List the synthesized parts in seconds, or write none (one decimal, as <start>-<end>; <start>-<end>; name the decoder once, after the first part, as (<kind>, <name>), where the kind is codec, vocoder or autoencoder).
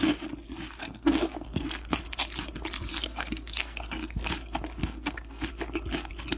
0.8-2.0 (codec, SNAC); 2.9-4.3; 4.8-5.5